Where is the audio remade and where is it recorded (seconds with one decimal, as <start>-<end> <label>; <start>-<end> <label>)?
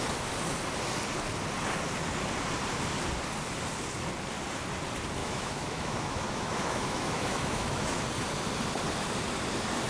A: 0.0-5.2 recorded; 5.2-8.0 remade; 8.0-9.9 recorded